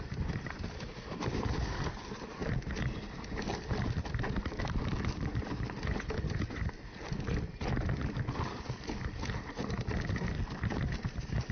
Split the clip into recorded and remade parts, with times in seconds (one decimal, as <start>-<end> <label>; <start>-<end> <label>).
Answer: 0.0-11.5 recorded